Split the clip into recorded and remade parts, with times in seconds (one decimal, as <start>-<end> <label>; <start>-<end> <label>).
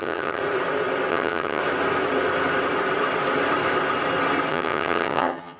0.0-0.4 remade; 0.4-1.1 recorded; 1.1-1.6 remade; 1.6-4.5 recorded; 4.5-5.6 remade